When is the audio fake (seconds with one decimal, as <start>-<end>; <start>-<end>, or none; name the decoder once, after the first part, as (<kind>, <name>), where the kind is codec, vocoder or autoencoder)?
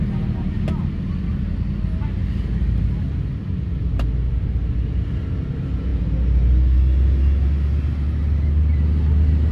none